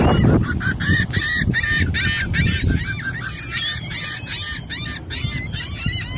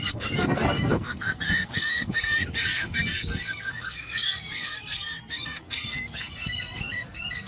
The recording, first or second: first